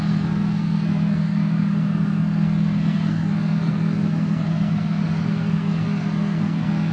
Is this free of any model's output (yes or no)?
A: no